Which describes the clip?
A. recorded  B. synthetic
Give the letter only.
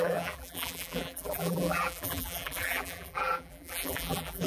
B